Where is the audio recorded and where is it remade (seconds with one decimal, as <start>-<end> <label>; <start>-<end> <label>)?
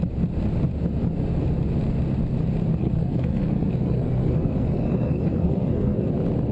0.0-2.8 recorded; 2.8-6.1 remade; 6.1-6.5 recorded